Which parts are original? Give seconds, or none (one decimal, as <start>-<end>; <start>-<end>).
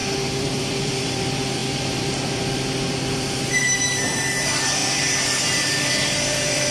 none